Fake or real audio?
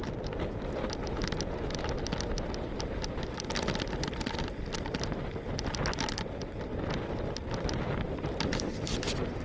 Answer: real